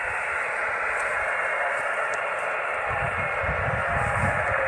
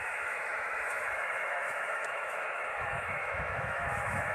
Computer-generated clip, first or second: second